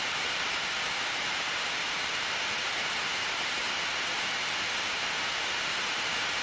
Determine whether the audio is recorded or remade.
recorded